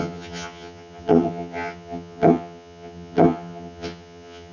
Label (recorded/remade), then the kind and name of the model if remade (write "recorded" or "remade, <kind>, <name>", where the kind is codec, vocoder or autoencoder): remade, vocoder, HiFi-GAN